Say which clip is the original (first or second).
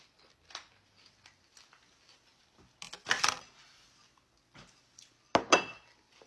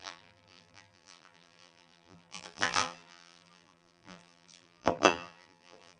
first